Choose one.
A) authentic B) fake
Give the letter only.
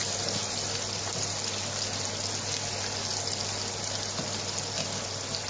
A